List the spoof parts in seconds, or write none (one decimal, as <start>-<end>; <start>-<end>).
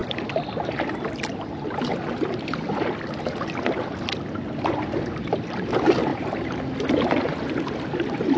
none